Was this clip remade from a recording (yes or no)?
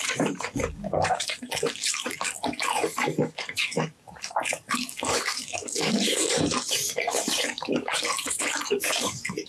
yes